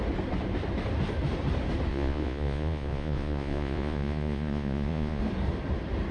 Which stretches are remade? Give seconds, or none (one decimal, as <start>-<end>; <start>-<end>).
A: 1.9-5.2